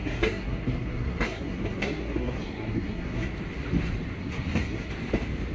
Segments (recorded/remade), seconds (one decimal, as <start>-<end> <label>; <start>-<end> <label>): 0.0-3.3 remade; 3.3-4.2 recorded; 4.2-4.9 remade; 4.9-5.5 recorded